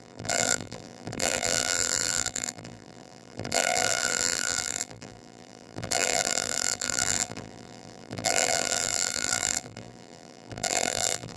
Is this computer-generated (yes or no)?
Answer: yes